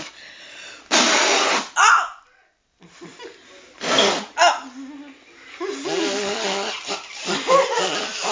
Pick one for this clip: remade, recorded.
recorded